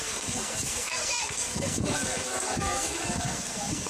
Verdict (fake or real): fake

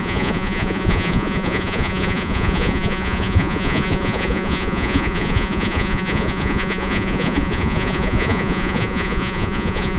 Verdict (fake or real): fake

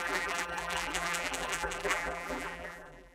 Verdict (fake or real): fake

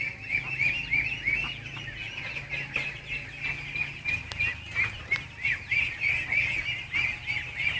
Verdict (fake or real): real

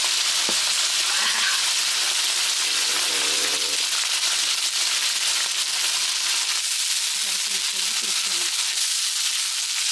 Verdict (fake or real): real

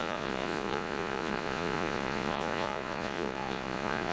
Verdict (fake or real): fake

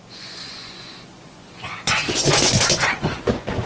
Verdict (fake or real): fake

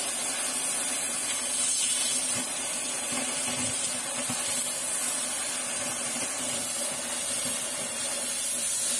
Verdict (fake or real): real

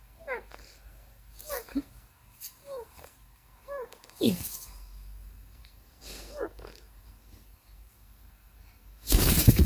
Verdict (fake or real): fake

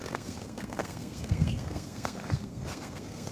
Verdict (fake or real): fake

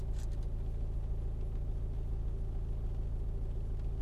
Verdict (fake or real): real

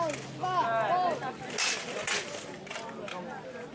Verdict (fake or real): real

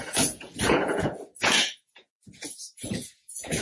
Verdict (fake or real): fake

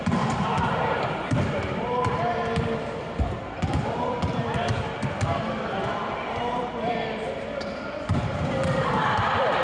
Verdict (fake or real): fake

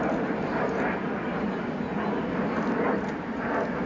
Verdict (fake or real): real